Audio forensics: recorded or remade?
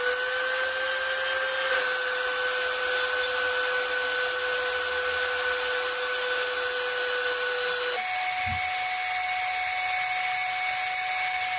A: recorded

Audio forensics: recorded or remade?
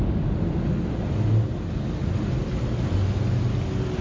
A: recorded